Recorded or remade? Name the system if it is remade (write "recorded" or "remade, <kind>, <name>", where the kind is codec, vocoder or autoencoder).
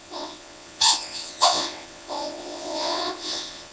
remade, vocoder, WaveNeXt